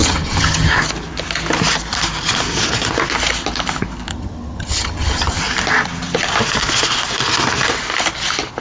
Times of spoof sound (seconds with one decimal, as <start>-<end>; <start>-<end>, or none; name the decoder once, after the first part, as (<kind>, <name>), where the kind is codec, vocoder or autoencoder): 0.0-0.8 (vocoder, HiFi-GAN); 4.1-5.4